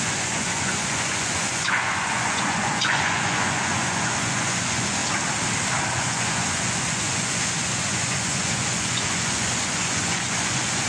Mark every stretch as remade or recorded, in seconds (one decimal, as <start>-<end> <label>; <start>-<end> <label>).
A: 0.0-5.0 remade; 5.0-5.9 recorded; 5.9-10.9 remade